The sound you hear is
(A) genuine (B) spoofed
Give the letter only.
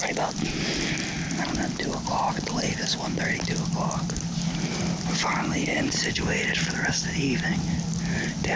A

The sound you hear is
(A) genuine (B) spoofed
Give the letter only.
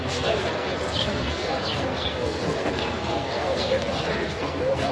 B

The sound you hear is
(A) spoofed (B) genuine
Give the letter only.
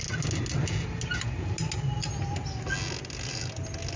B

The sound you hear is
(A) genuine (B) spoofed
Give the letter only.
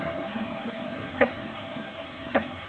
B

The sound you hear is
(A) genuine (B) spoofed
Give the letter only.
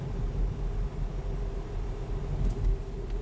A